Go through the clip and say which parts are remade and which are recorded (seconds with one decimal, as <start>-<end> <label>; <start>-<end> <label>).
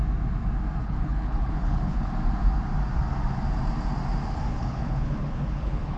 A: 0.0-0.8 recorded; 0.8-2.1 remade; 2.1-4.5 recorded; 4.5-6.0 remade